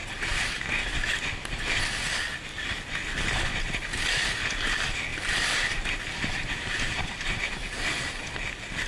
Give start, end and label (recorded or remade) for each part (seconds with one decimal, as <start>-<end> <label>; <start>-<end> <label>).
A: 0.0-5.1 recorded; 5.1-7.5 remade; 7.5-8.9 recorded